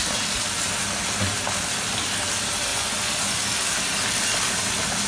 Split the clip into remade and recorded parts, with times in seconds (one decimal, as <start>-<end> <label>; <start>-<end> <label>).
0.0-2.7 recorded; 2.7-3.4 remade; 3.4-5.1 recorded